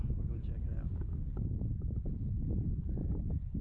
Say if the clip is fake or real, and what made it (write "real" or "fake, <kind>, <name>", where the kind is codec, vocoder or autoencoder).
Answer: real